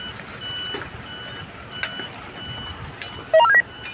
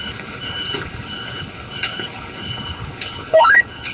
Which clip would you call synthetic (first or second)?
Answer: second